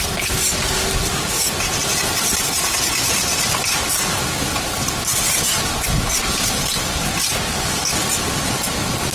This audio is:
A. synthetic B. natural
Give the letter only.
B